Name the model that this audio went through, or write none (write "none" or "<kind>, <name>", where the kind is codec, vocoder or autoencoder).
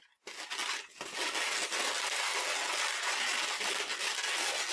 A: none